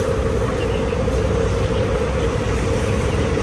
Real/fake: real